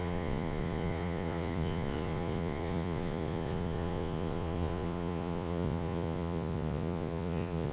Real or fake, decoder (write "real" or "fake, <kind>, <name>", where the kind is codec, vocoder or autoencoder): fake, vocoder, Vocos